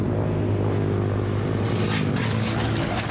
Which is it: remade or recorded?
recorded